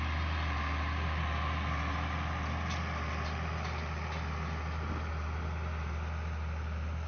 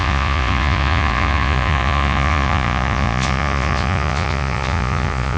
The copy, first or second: second